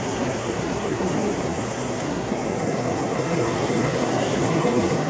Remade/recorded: remade